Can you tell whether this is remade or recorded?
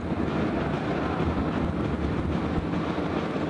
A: recorded